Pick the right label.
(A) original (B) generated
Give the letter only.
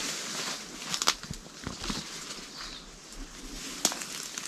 A